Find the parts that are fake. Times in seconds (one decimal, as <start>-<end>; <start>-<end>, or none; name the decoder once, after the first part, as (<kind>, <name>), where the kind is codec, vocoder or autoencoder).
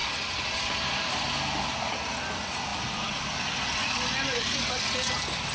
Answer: 0.0-1.0 (vocoder, BigVGAN v2); 2.7-4.7